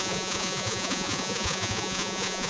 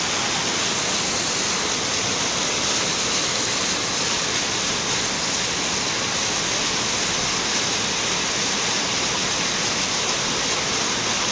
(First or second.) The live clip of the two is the second